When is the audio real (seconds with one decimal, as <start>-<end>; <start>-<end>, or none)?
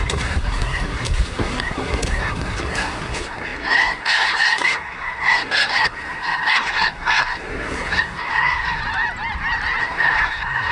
8.8-9.8